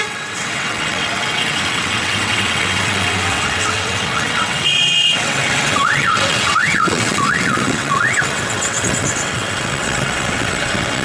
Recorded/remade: remade